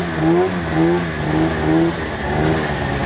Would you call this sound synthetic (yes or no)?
no